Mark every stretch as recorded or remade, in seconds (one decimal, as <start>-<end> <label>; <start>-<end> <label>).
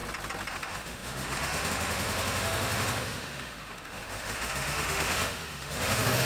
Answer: 0.0-0.5 recorded; 0.5-6.2 remade